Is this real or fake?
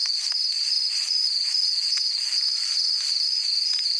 real